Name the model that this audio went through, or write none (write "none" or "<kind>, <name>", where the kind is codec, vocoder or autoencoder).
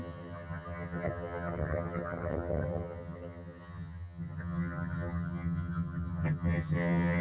vocoder, HiFi-GAN